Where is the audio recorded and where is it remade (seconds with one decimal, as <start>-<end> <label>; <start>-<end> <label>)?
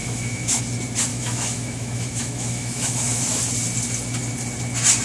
0.0-0.6 remade; 0.6-1.1 recorded; 1.1-3.4 remade; 3.4-5.0 recorded